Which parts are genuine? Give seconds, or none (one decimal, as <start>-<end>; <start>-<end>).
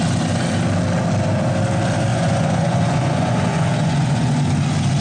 0.0-2.1; 4.4-5.0